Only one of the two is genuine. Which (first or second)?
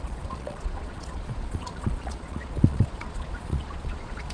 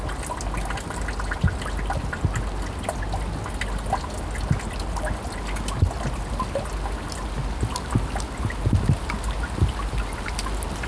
second